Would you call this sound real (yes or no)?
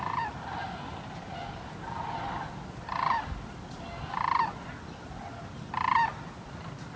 yes